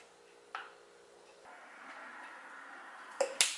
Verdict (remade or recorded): recorded